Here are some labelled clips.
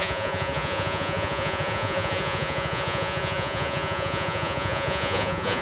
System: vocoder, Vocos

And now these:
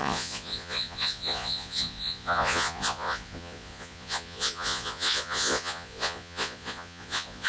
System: vocoder, Vocos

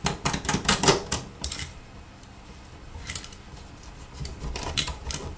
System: vocoder, BigVGAN v2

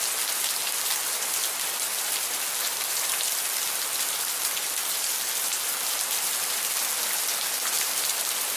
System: none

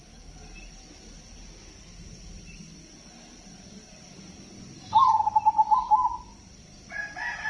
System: none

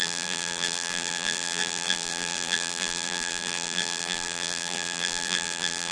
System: vocoder, BigVGAN v2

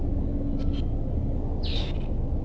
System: none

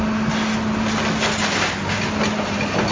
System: none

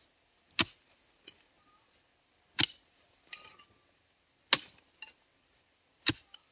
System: none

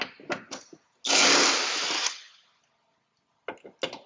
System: none